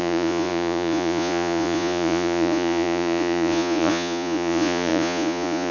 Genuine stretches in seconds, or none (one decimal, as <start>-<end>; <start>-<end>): none